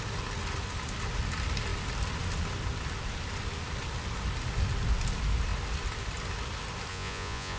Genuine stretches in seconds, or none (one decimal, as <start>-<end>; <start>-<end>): 0.0-6.9